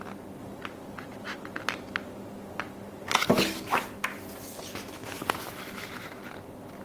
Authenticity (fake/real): real